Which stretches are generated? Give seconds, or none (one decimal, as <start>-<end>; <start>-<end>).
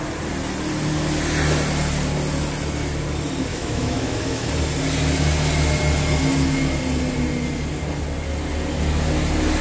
3.5-4.5